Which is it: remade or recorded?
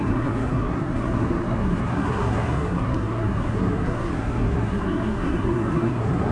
remade